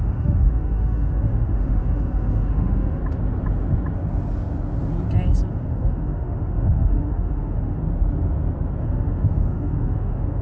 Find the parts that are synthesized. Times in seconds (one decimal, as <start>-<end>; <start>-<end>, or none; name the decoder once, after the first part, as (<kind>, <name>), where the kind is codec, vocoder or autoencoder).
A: 0.0-3.0 (autoencoder, DAC-VAE); 5.5-7.8; 8.8-10.4